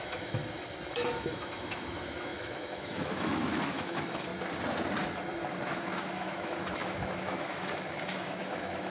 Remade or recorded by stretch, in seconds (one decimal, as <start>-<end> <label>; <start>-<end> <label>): 0.0-0.4 remade; 0.4-0.9 recorded; 0.9-4.3 remade; 4.3-5.7 recorded; 5.7-8.9 remade